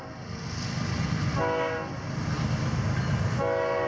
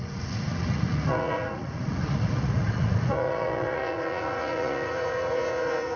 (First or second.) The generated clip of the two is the second